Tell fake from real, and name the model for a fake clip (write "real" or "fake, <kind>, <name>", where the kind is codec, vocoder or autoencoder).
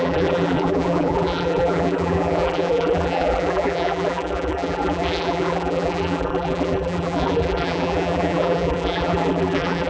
fake, vocoder, BigVGAN v2